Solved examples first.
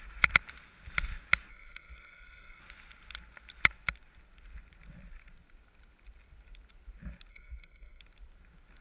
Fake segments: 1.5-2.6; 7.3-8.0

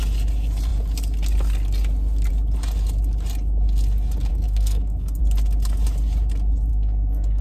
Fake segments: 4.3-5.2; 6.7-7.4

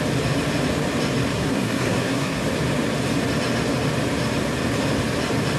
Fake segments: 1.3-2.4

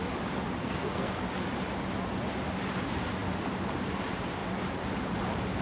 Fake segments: 0.6-1.2

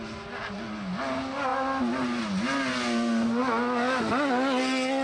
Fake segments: none

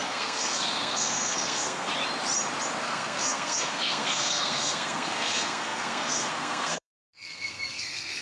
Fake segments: 0.0-1.9; 2.8-8.2